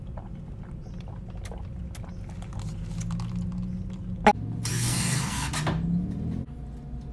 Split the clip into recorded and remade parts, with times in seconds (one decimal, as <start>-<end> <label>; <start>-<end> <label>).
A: 0.0-4.7 recorded; 4.7-5.5 remade; 5.5-7.1 recorded